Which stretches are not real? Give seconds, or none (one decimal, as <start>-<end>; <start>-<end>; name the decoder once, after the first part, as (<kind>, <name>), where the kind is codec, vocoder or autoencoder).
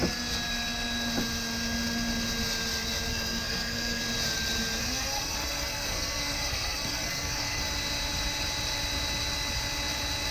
3.1-4.0 (codec, SNAC); 4.8-7.6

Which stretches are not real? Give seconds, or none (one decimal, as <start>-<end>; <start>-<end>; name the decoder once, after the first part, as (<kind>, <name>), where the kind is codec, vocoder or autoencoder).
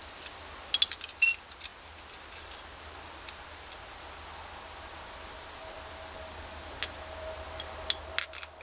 none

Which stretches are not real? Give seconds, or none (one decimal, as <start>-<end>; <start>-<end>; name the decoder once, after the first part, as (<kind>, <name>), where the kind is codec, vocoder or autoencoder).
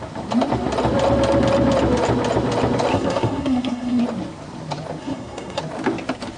2.9-4.0 (codec, SNAC); 5.0-5.6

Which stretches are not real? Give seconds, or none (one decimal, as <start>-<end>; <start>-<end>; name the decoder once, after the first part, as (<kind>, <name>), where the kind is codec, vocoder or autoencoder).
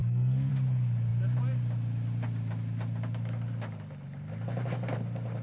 0.0-0.5 (codec, SNAC)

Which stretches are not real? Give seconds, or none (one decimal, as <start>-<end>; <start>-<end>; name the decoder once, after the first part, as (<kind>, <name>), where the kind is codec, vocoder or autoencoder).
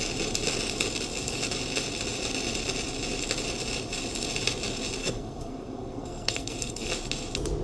5.0-6.9 (codec, SNAC)